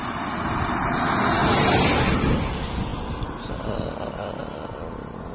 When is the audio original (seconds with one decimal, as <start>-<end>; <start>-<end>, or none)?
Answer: 0.0-1.4; 2.0-5.3

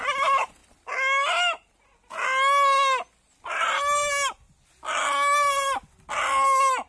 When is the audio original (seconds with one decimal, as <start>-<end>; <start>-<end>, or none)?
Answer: 0.0-6.9

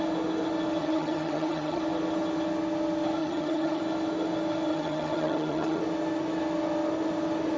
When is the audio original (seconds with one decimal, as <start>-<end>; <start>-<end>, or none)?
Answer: 0.0-0.8; 1.8-3.2; 3.8-4.7; 5.8-7.6

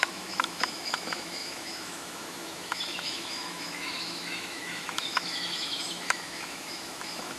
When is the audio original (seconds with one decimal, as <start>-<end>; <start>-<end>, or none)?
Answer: none